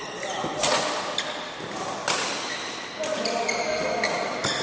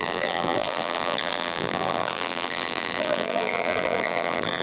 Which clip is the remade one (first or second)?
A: second